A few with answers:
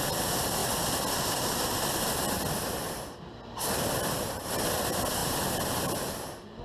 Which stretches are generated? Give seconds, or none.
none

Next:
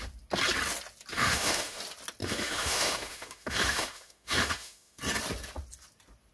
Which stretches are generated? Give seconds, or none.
1.1-1.8; 2.2-5.0

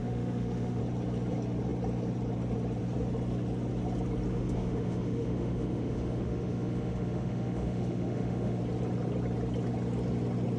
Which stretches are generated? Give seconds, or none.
0.0-0.8; 4.3-8.6

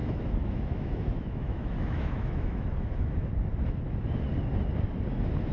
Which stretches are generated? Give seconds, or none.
0.0-3.3

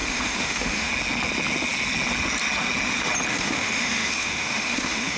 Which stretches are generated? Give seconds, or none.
0.0-0.9; 3.3-5.2

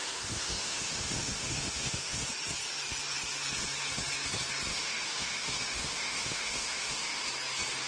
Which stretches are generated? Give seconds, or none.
0.0-2.3; 4.7-7.3